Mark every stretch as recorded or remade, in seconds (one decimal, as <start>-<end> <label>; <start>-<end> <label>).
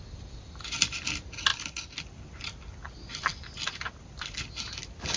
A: 0.0-5.2 recorded